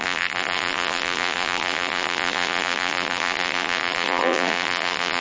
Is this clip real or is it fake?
fake